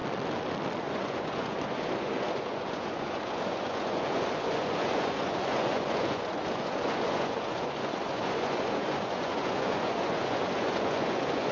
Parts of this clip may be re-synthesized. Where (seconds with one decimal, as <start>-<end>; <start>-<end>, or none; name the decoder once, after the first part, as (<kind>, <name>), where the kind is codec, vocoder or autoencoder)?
0.8-11.5 (vocoder, Vocos)